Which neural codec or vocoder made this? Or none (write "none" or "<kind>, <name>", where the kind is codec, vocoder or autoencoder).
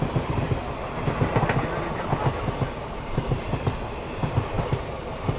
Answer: none